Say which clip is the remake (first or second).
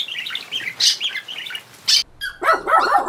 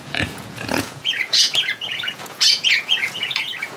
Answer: second